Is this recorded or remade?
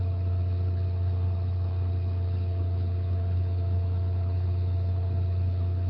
remade